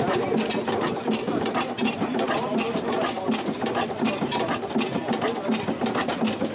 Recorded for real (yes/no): yes